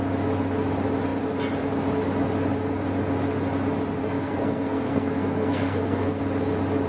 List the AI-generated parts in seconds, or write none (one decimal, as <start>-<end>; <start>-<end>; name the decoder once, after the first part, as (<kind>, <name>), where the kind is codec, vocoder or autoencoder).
4.0-6.2 (codec, SNAC)